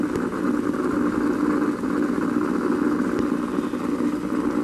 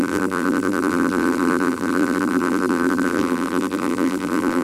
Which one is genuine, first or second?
first